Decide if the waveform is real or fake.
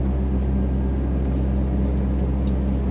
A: real